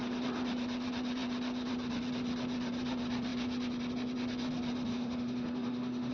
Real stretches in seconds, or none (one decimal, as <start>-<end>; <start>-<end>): 0.0-4.9